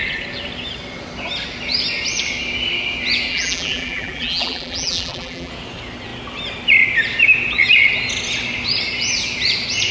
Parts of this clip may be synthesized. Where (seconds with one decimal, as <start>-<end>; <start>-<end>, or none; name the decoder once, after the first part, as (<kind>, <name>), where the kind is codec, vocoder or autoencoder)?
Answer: 3.3-5.5 (vocoder, BigVGAN v2)